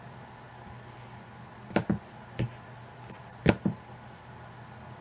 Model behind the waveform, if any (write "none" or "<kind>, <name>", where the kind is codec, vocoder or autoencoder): none